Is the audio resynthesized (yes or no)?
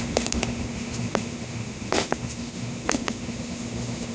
yes